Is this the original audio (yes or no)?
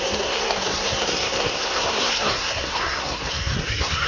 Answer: no